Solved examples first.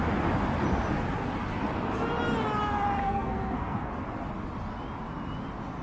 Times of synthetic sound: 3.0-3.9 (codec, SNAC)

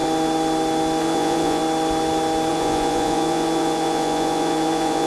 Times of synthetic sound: 1.0-1.6 (vocoder, Vocos); 2.5-5.1

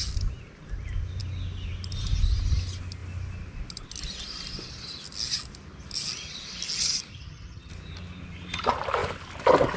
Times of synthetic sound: 7.1-7.7 (vocoder, HiFi-GAN)